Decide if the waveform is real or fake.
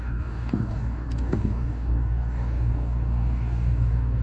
fake